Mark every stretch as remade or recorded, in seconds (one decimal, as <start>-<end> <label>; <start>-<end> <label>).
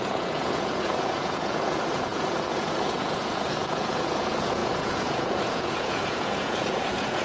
0.0-7.2 remade